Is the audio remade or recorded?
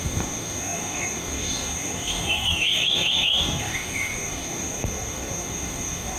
remade